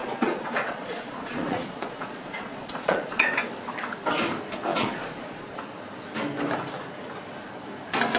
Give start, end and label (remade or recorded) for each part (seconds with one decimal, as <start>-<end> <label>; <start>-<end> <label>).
0.0-3.3 remade; 3.3-4.7 recorded; 4.7-5.6 remade; 5.6-8.2 recorded